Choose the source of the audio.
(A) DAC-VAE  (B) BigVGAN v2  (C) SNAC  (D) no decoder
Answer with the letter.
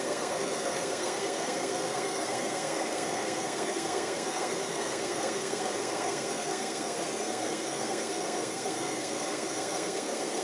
C